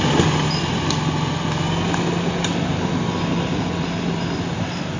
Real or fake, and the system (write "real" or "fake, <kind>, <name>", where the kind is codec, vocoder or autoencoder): real